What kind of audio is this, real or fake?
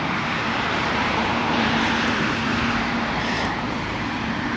fake